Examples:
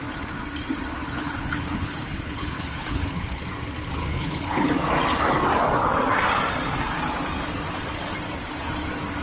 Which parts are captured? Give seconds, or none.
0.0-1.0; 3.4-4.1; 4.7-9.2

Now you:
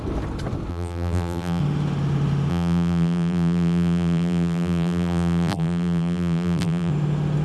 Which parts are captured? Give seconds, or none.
0.0-0.7; 1.6-2.5; 6.9-7.4

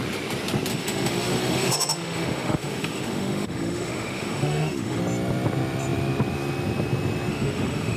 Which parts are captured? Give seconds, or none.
0.0-0.7; 5.0-7.3